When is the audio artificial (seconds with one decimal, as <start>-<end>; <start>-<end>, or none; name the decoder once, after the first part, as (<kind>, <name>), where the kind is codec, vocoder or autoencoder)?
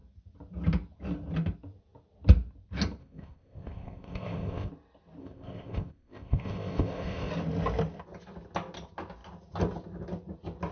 3.0-4.7 (codec, ZipCodec); 5.2-7.3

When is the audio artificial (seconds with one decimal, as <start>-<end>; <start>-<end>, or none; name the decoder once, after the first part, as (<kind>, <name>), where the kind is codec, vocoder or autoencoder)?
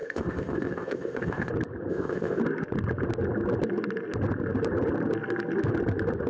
0.0-1.5 (codec, ZipCodec); 1.9-2.4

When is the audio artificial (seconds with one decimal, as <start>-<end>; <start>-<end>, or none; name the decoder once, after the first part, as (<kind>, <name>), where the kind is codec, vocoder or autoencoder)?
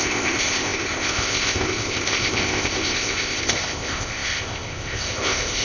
0.0-5.6 (codec, ZipCodec)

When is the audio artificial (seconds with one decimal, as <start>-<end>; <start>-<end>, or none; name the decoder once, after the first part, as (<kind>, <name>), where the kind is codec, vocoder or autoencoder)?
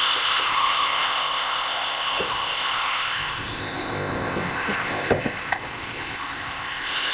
0.0-7.1 (codec, ZipCodec)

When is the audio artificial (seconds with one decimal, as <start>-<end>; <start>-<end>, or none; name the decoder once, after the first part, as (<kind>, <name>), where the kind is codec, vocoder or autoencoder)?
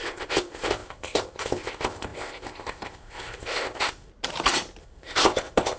0.0-4.1 (codec, ZipCodec); 4.8-5.8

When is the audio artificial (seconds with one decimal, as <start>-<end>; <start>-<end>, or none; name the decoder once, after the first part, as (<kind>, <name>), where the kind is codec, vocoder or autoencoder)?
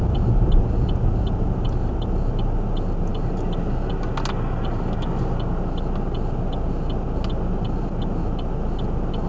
none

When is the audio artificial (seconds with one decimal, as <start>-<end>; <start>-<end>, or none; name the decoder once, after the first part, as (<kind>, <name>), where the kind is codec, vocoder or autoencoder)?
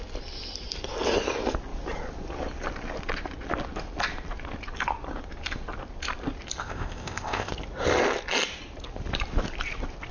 6.6-7.5 (codec, ZipCodec)